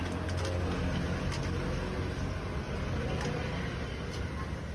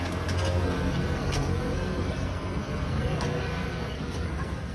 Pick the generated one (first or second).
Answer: second